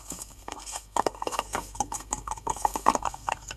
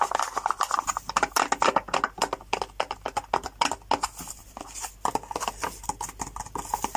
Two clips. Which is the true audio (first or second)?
second